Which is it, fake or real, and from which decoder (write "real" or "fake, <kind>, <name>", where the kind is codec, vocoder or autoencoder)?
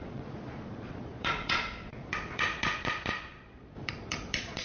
fake, vocoder, Vocos